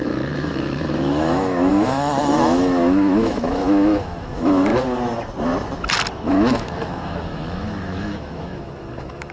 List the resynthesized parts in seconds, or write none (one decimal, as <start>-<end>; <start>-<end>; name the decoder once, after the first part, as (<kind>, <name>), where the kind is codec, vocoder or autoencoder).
0.0-4.7 (autoencoder, DAC-VAE); 6.1-9.3